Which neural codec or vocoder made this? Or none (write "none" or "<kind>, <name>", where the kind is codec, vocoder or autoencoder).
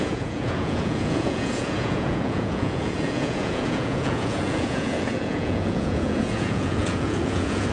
vocoder, Vocos